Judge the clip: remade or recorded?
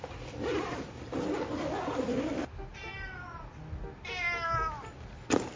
recorded